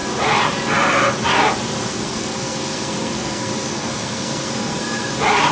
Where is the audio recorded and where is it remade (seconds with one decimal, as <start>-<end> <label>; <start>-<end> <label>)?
0.0-1.8 recorded; 1.8-5.1 remade; 5.1-5.5 recorded

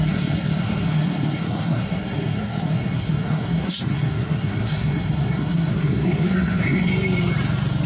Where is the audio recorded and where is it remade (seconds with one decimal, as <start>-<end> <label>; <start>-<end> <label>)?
0.0-6.9 remade; 6.9-7.9 recorded

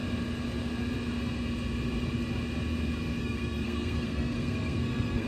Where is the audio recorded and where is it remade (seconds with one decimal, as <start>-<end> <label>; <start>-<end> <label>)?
0.0-3.2 recorded; 3.2-5.3 remade

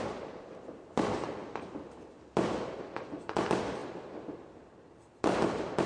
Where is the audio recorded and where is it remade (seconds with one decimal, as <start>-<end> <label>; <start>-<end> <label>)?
0.0-5.9 recorded